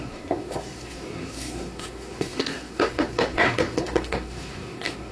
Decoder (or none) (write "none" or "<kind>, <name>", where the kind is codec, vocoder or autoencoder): codec, SNAC